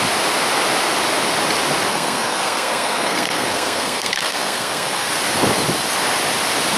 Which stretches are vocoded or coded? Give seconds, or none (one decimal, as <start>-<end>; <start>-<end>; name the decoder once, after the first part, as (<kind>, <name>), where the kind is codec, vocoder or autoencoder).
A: 1.9-5.1 (codec, SNAC)